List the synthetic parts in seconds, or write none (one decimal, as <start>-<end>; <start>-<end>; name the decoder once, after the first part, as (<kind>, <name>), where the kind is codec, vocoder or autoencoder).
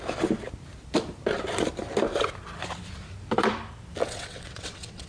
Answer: 4.0-5.1 (vocoder, WaveNeXt)